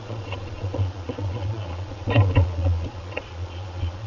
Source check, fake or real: fake